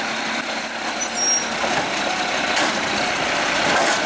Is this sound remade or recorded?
recorded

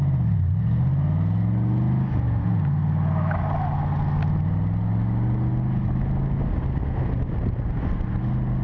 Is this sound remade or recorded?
recorded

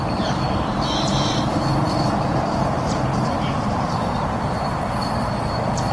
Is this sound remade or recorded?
remade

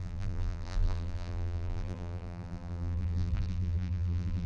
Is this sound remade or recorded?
remade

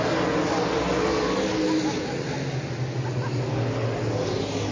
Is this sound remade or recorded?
recorded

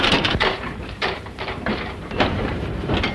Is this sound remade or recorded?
remade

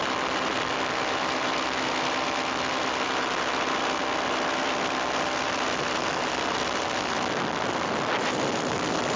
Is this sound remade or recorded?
recorded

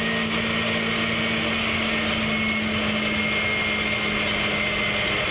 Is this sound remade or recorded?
recorded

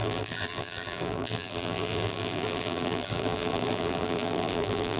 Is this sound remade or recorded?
remade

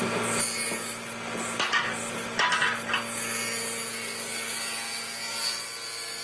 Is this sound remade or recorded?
recorded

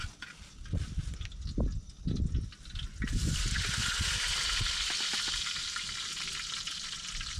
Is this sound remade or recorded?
recorded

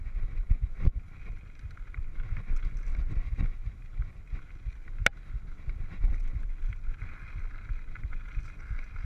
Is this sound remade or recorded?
recorded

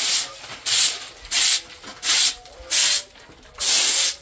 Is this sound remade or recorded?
recorded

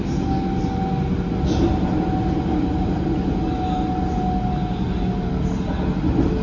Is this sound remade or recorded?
recorded